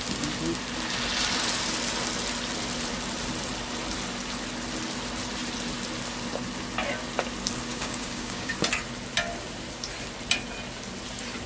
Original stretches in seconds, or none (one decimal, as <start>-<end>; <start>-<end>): 0.0-7.7; 8.5-11.5